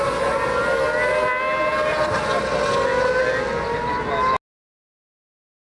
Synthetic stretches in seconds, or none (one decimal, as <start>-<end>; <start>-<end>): none